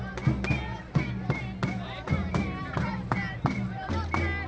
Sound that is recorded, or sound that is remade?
recorded